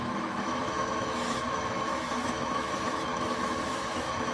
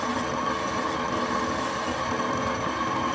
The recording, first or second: second